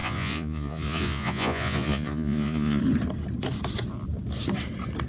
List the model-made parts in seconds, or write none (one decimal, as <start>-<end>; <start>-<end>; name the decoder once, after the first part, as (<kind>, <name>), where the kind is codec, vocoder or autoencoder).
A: 0.0-2.8 (vocoder, Vocos)